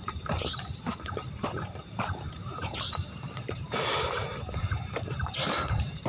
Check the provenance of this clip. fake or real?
fake